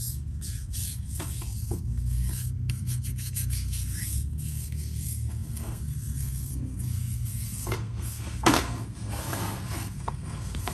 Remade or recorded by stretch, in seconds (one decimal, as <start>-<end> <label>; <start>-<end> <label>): 0.0-10.7 remade